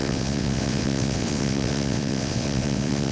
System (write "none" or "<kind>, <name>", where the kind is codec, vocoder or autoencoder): vocoder, WaveNeXt